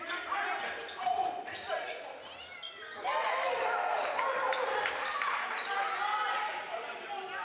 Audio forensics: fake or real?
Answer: real